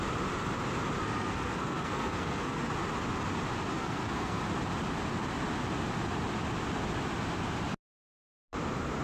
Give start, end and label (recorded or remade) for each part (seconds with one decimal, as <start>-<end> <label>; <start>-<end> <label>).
0.0-1.0 recorded; 1.0-2.7 remade; 2.7-3.8 recorded; 3.8-4.4 remade; 4.4-9.0 recorded